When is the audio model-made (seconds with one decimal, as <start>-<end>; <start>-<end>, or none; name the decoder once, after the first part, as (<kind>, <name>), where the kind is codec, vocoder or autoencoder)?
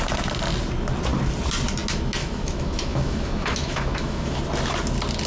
2.2-4.4 (autoencoder, DAC-VAE)